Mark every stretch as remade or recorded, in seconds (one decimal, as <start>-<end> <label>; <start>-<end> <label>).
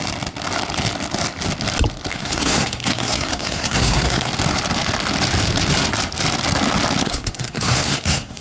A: 0.0-2.1 recorded; 2.1-4.3 remade; 4.3-7.0 recorded; 7.0-8.4 remade